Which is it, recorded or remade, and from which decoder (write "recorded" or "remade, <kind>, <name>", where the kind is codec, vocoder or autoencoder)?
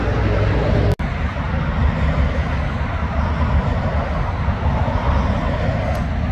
recorded